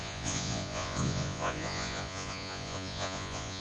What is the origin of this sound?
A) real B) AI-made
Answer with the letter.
B